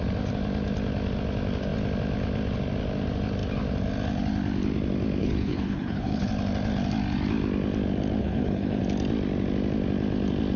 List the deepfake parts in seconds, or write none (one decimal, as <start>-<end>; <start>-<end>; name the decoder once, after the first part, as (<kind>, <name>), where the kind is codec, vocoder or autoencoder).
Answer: 5.2-6.3 (codec, HILCodec); 8.2-8.8